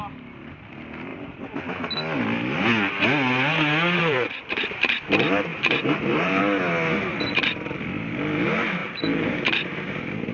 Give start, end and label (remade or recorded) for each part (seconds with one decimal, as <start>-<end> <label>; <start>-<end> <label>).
0.0-1.1 recorded; 1.1-1.6 remade; 1.6-4.0 recorded; 4.0-4.9 remade; 4.9-5.5 recorded; 5.5-6.4 remade; 6.4-8.8 recorded; 8.8-9.7 remade; 9.7-10.3 recorded